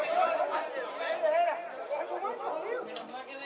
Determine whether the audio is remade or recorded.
recorded